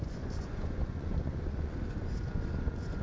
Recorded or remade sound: remade